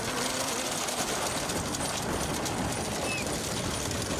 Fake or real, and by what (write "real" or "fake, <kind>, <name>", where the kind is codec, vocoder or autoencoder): real